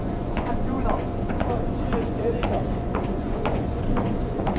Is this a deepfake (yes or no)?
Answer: yes